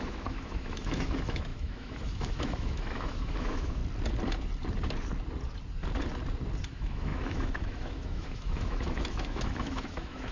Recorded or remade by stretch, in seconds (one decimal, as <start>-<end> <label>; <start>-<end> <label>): 0.0-3.8 remade; 3.8-6.6 recorded; 6.6-10.3 remade